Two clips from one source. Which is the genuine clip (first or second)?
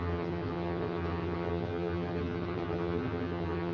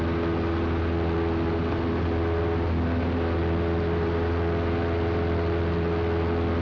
second